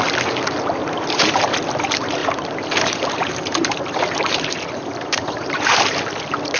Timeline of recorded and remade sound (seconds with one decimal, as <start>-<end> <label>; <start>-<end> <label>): 0.0-0.8 recorded; 0.8-1.5 remade; 1.5-2.2 recorded; 2.2-6.0 remade; 6.0-6.6 recorded